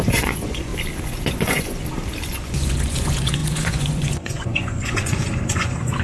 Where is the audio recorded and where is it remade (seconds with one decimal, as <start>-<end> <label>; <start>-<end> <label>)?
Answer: 0.0-0.7 remade; 0.7-1.3 recorded; 1.3-1.8 remade; 1.8-2.3 recorded; 2.3-6.0 remade